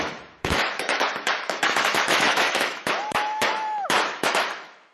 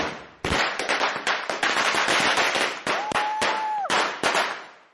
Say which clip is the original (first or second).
second